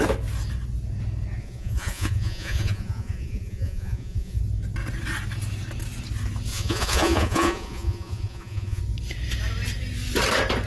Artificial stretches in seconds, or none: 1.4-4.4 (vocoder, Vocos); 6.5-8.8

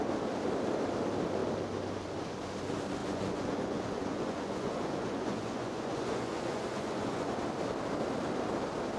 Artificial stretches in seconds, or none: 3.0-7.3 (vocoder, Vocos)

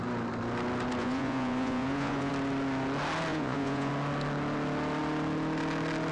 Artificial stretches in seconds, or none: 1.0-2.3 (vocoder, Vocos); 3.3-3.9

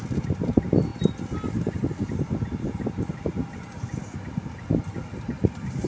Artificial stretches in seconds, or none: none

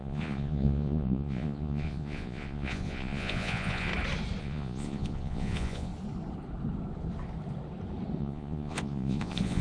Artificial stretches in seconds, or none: 0.0-3.9 (vocoder, Vocos); 4.4-5.9; 8.2-9.6

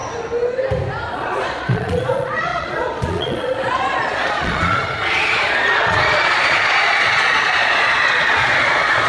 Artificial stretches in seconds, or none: 1.1-9.1 (vocoder, Vocos)

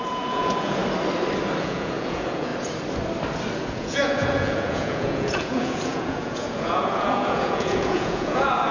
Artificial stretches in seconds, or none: 0.0-0.8 (vocoder, Vocos); 1.6-2.5; 3.7-8.7